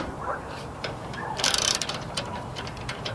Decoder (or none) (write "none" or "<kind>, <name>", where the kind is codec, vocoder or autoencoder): vocoder, BigVGAN v2